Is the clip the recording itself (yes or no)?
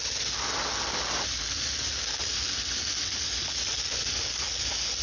yes